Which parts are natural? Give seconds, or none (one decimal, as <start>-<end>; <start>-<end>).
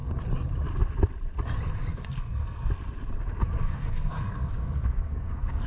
0.0-1.9; 2.7-3.6